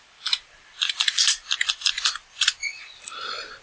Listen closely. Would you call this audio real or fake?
real